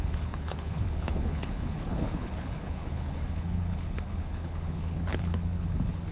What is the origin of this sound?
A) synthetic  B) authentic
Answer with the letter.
A